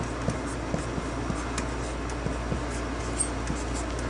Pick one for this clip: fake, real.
real